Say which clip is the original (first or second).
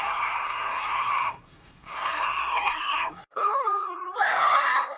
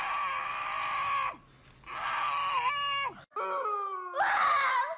second